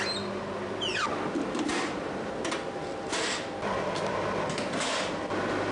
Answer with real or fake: real